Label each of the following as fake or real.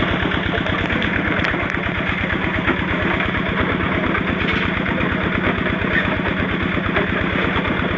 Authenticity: real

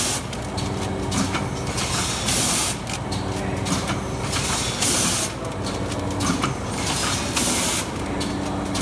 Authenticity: real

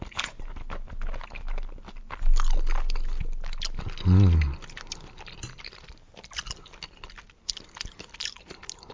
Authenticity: real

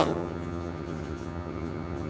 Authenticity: fake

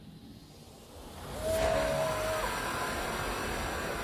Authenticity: real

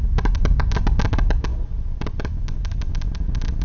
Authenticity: real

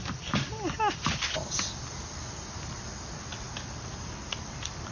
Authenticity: real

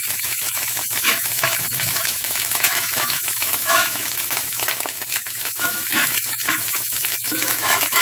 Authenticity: fake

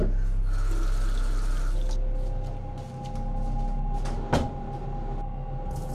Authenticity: real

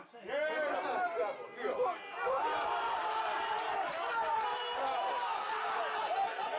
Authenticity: real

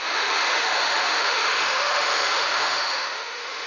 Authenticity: fake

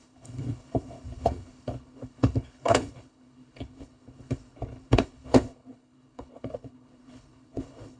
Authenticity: fake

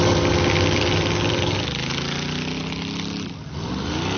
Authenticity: real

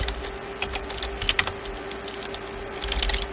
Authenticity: real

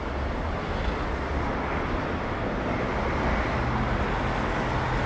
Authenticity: real